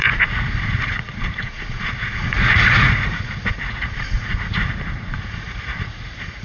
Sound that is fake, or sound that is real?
fake